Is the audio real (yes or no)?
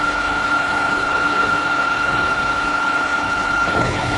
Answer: no